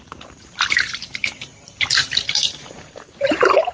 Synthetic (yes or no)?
yes